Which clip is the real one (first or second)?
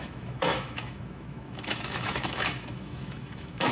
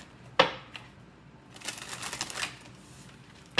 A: second